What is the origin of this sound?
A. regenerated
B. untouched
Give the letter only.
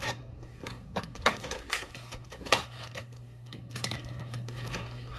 A